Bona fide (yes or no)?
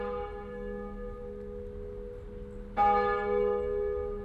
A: yes